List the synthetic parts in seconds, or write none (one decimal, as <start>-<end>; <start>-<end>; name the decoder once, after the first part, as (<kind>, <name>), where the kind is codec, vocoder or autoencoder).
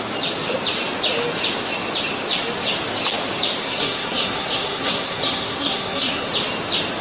3.6-6.3 (codec, SNAC)